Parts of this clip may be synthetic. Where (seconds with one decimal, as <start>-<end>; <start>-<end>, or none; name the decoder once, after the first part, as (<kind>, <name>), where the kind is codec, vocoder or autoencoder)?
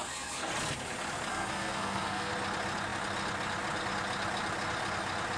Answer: 0.0-0.5 (codec, SNAC); 1.3-2.3